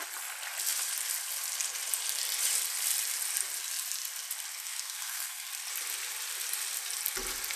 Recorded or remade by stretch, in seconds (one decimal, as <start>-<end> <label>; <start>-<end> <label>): 0.0-4.5 recorded; 4.5-5.5 remade; 5.5-7.6 recorded